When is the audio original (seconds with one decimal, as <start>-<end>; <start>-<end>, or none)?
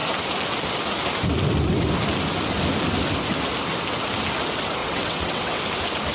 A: 0.0-4.8; 5.6-6.1